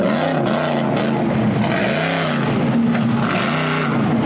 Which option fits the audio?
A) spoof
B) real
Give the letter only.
B